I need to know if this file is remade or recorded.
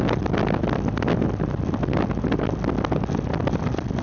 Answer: recorded